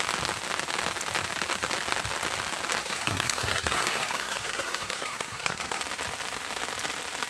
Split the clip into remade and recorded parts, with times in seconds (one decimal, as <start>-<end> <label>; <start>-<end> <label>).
0.0-2.8 recorded; 2.8-5.8 remade; 5.8-7.3 recorded